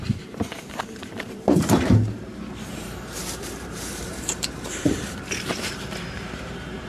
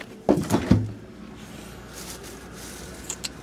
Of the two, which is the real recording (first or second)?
second